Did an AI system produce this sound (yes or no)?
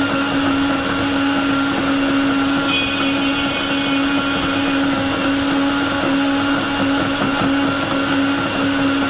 no